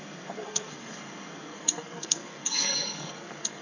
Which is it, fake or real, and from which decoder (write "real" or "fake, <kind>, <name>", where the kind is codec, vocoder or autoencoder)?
fake, codec, SNAC